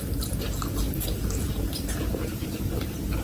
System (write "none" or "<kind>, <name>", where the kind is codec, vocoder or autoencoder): vocoder, BigVGAN v2